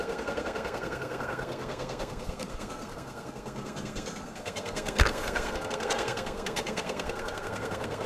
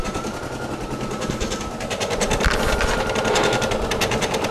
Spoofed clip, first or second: first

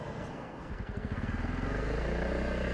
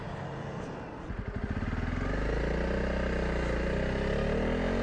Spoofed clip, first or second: first